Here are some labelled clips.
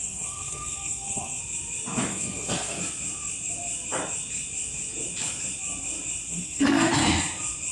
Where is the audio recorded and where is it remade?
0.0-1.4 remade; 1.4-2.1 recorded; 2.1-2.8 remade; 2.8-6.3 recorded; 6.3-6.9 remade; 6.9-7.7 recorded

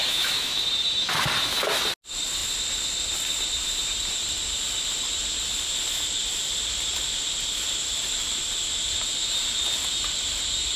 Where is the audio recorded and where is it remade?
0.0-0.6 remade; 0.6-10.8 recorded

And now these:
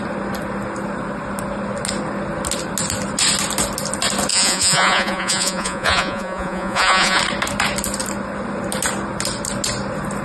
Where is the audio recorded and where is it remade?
0.0-4.3 recorded; 4.3-7.2 remade; 7.2-10.2 recorded

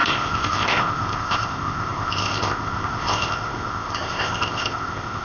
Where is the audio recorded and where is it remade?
0.0-5.2 remade

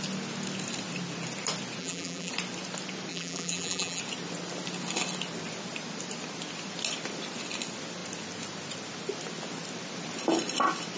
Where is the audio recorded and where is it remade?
0.0-1.8 recorded; 1.8-2.3 remade; 2.3-3.1 recorded; 3.1-4.0 remade; 4.0-11.0 recorded

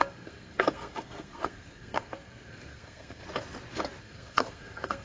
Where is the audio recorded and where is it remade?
0.0-3.2 remade; 3.2-4.0 recorded; 4.0-5.0 remade

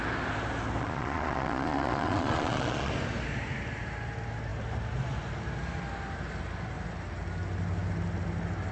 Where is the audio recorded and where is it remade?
0.0-0.8 recorded; 0.8-2.9 remade; 2.9-8.7 recorded

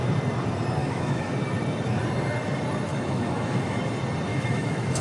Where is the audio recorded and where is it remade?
0.0-0.8 recorded; 0.8-1.3 remade; 1.3-2.9 recorded; 2.9-3.8 remade; 3.8-4.3 recorded; 4.3-5.0 remade